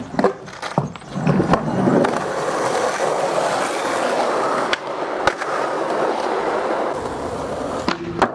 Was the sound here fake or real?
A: real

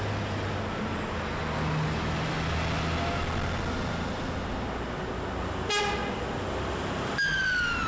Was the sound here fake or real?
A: real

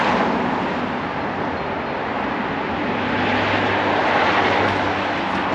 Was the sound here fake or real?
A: real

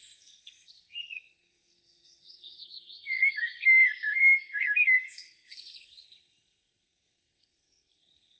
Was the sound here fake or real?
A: fake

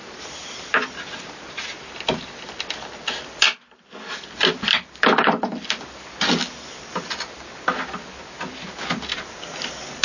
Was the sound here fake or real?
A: real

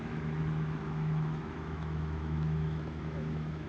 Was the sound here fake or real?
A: fake